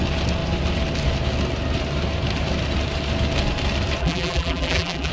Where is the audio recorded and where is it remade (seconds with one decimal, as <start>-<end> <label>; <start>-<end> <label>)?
0.0-4.0 recorded; 4.0-5.1 remade